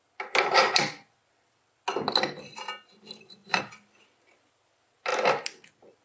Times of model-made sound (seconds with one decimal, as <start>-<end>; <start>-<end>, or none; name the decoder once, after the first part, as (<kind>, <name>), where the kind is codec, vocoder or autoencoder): none